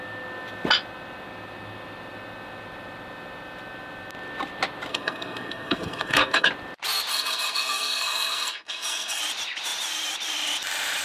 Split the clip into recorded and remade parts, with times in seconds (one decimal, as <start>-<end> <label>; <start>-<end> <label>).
0.0-4.9 recorded; 4.9-6.5 remade; 6.5-7.1 recorded; 7.1-9.2 remade; 9.2-11.0 recorded